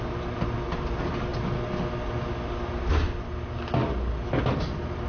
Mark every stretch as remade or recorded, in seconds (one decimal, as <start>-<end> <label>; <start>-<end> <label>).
0.0-5.1 recorded